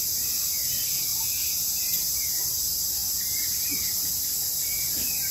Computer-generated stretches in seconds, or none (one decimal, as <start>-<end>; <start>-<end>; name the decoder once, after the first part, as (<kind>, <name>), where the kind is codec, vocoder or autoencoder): 1.1-2.2 (vocoder, BigVGAN v2)